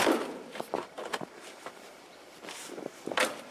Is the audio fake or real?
fake